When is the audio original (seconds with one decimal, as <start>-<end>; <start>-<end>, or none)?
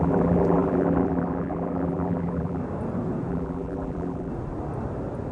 2.6-3.3; 4.3-5.3